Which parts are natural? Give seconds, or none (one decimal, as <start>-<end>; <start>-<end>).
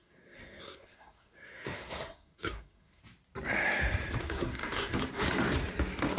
3.0-4.2; 5.0-6.2